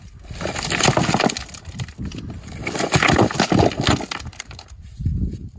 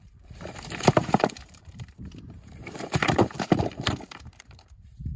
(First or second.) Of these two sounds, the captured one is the first